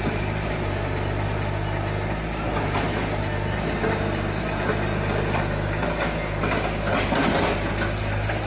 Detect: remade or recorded recorded